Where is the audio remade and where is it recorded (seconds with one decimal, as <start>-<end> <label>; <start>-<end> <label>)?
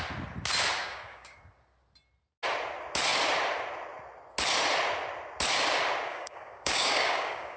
0.0-0.8 recorded; 0.8-1.4 remade; 1.4-6.1 recorded; 6.1-7.6 remade